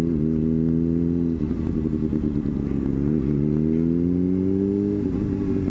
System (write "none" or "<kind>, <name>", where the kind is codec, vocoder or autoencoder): none